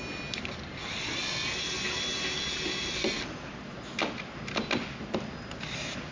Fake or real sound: real